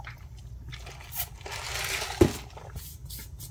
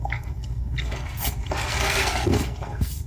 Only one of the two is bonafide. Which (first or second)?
first